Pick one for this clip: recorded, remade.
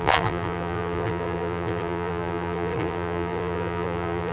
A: remade